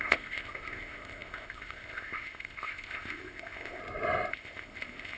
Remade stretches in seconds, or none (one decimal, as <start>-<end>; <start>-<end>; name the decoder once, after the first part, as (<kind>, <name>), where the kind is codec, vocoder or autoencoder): 0.0-3.8 (codec, ZipCodec); 4.3-5.2